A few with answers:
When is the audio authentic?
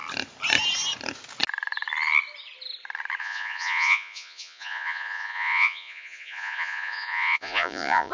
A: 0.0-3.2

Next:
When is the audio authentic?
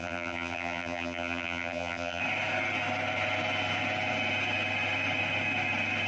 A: 2.2-6.1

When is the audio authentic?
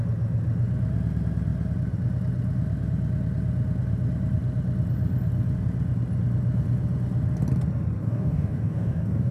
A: 0.0-8.0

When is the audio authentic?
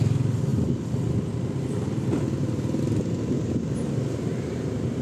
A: 0.0-5.0